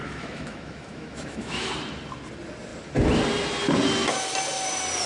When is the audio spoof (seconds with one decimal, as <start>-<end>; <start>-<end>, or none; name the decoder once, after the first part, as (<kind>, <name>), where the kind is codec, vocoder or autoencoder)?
0.0-1.7 (autoencoder, DAC-VAE)